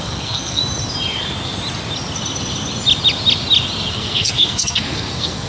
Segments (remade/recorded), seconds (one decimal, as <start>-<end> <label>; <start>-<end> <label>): 0.0-0.6 remade; 0.6-3.9 recorded; 3.9-5.5 remade